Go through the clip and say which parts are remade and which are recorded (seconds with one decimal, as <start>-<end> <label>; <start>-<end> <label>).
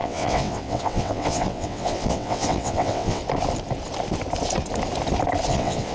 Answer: 0.0-3.2 remade; 3.2-5.5 recorded; 5.5-5.9 remade